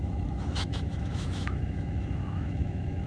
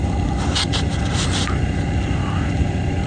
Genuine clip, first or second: second